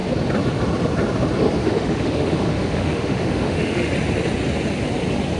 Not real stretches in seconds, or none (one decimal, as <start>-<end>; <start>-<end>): 1.6-3.9